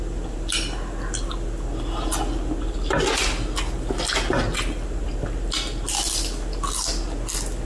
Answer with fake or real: real